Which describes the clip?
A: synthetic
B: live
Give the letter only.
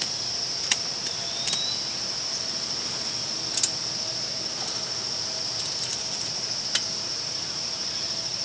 B